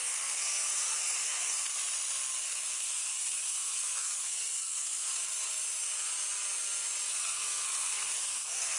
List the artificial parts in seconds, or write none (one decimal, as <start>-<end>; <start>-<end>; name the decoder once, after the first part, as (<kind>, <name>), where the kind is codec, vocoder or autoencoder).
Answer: 0.0-1.7 (codec, SNAC); 2.4-5.2; 7.1-8.8